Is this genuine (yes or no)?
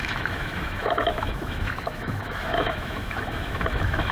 no